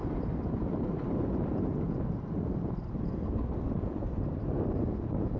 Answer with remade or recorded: recorded